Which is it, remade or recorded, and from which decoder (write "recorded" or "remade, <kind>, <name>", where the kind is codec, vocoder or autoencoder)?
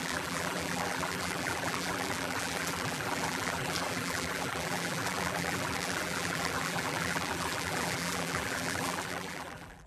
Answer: remade, vocoder, BigVGAN v2